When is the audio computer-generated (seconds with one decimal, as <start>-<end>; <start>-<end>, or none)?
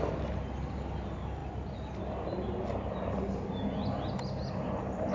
none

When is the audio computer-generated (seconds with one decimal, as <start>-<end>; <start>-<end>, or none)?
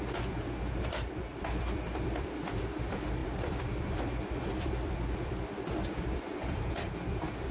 none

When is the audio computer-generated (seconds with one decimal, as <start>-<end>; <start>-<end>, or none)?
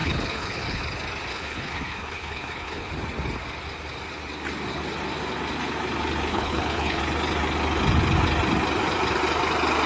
0.0-0.8; 1.3-2.9; 6.3-7.0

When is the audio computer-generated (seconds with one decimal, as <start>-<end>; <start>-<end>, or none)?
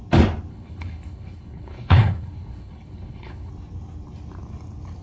0.5-3.5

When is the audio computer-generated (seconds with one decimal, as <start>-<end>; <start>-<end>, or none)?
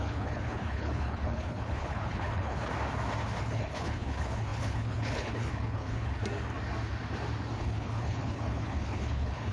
0.0-2.7; 3.4-6.2; 7.6-9.5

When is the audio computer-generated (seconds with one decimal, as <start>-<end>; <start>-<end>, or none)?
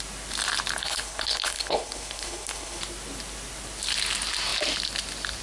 0.8-2.8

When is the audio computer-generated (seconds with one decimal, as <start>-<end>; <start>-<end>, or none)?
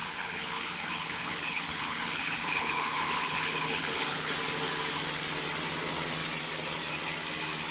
0.0-4.3